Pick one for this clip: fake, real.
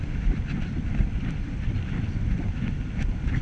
real